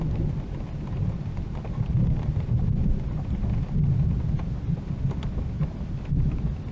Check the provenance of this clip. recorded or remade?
recorded